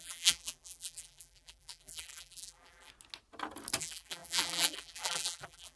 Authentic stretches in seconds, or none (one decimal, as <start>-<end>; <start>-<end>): 2.9-3.8